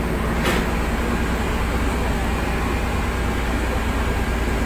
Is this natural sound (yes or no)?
yes